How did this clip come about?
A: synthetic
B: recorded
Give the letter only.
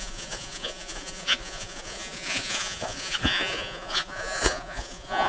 A